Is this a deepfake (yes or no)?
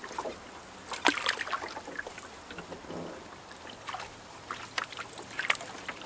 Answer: no